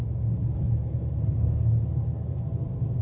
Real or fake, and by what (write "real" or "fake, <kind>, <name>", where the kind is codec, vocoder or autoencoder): real